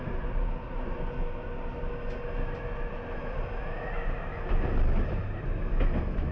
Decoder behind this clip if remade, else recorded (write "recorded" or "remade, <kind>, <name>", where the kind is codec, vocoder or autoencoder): recorded